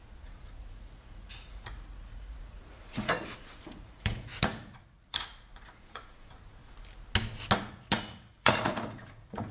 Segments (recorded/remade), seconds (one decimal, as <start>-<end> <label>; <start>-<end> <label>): 0.0-6.6 remade; 6.6-7.7 recorded; 7.7-9.5 remade